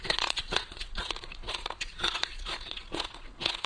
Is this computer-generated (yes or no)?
yes